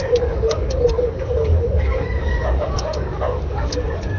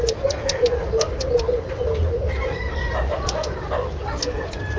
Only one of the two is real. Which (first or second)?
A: second